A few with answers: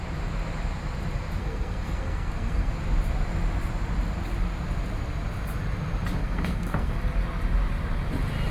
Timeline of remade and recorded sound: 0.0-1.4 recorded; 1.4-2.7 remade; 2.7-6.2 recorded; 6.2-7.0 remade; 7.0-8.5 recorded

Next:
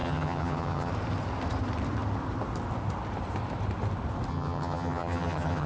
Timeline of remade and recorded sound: 0.0-0.9 remade; 0.9-4.3 recorded; 4.3-5.7 remade

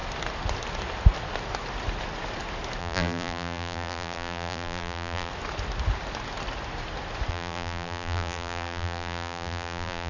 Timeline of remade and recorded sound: 0.0-2.8 recorded; 2.8-5.3 remade; 5.3-7.3 recorded; 7.3-10.1 remade

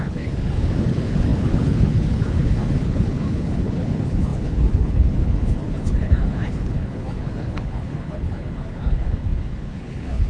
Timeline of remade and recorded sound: 0.0-10.3 remade

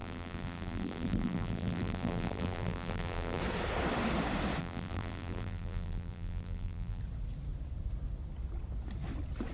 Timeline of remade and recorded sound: 0.0-3.4 remade; 3.4-4.6 recorded; 4.6-7.0 remade; 7.0-9.5 recorded

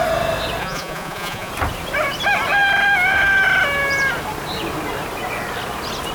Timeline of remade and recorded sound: 0.0-0.6 recorded; 0.6-1.5 remade; 1.5-6.1 recorded